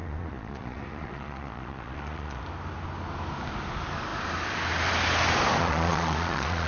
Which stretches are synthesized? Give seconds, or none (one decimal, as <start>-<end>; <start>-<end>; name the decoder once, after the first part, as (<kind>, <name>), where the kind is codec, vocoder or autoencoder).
0.0-2.4 (vocoder, Vocos); 5.6-6.7